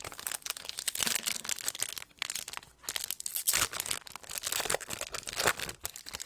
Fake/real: real